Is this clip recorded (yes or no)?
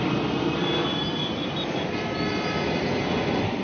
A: yes